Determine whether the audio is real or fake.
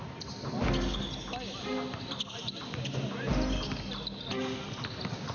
real